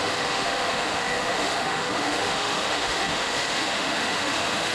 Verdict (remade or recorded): remade